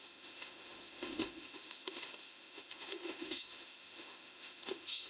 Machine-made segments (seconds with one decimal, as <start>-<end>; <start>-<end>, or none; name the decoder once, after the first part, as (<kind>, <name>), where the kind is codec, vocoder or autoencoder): 0.0-5.1 (autoencoder, DAC-VAE)